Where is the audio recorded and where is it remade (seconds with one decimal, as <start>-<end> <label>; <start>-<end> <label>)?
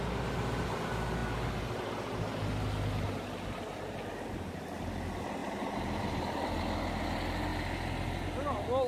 0.0-5.4 recorded; 5.4-6.0 remade; 6.0-8.9 recorded